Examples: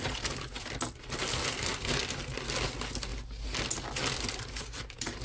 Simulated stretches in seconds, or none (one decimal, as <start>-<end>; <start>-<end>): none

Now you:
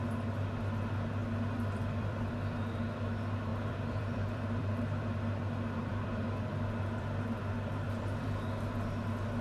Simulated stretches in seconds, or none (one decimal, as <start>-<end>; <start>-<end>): 1.2-2.8; 3.5-8.4

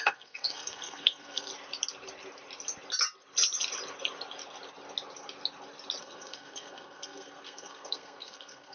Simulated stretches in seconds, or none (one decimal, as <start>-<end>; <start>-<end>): 0.0-1.5; 6.0-8.7